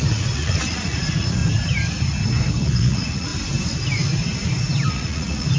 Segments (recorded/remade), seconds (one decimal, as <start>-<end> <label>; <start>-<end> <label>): 0.0-1.4 remade; 1.4-2.6 recorded; 2.6-3.3 remade; 3.3-4.9 recorded; 4.9-5.6 remade